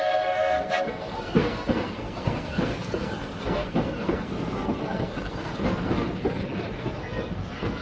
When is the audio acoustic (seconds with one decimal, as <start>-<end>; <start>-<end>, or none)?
none

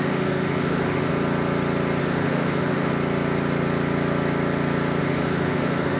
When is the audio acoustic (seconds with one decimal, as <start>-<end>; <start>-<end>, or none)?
1.1-2.0; 2.9-5.0